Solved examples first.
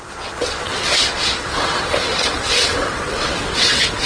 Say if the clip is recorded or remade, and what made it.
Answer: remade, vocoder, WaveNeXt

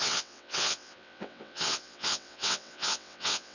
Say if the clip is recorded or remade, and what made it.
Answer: remade, vocoder, WaveNeXt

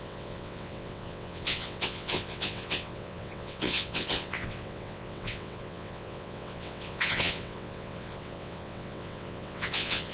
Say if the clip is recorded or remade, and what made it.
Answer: remade, vocoder, WaveNeXt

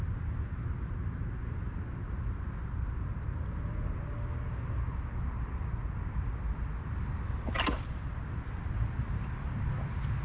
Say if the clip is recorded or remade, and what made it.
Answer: recorded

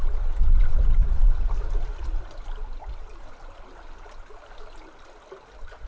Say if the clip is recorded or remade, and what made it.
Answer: recorded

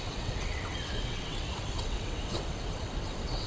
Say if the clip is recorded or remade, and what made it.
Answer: remade, vocoder, WaveNeXt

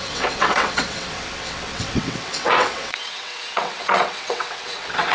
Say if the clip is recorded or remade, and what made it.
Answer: remade, vocoder, WaveNeXt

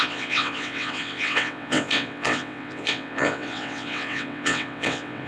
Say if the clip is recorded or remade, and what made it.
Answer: remade, vocoder, WaveNeXt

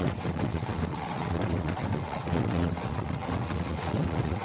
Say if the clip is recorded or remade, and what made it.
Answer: remade, vocoder, WaveNeXt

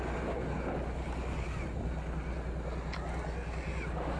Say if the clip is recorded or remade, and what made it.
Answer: recorded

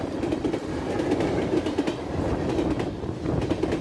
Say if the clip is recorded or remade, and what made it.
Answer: recorded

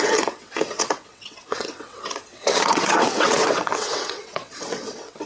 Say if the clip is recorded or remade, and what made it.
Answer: remade, vocoder, WaveNeXt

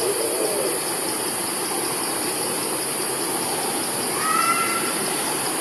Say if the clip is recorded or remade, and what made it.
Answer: recorded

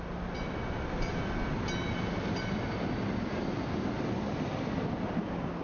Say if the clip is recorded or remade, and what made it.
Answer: recorded